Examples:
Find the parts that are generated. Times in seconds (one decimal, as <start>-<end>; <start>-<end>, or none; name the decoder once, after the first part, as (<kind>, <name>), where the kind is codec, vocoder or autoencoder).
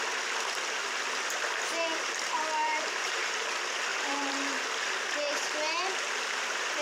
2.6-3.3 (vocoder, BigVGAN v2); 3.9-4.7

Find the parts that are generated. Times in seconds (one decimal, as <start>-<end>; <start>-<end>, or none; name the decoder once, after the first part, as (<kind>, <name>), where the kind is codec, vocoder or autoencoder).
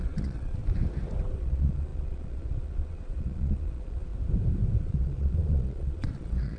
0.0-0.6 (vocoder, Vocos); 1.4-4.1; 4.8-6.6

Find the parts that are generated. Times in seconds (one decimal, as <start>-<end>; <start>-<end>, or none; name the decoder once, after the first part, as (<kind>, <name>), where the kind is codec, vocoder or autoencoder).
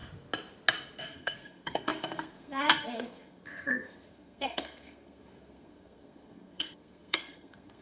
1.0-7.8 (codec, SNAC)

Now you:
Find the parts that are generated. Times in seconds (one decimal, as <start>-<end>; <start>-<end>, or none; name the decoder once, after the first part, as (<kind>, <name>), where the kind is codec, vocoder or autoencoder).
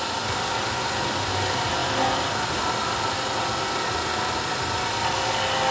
none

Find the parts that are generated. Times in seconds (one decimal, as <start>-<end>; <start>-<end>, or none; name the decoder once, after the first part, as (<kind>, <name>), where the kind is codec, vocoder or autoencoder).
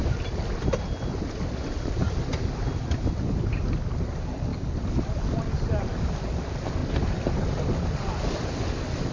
none